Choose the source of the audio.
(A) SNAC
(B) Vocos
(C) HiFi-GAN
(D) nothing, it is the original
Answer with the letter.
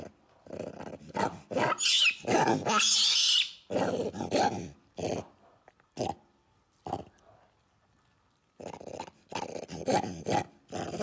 D